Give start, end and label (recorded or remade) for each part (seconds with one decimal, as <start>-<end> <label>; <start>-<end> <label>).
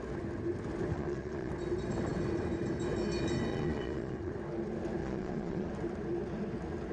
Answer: 0.0-0.9 recorded; 0.9-1.5 remade; 1.5-3.5 recorded; 3.5-4.3 remade; 4.3-5.0 recorded; 5.0-5.7 remade; 5.7-6.9 recorded